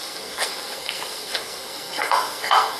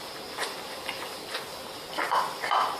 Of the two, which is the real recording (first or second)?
second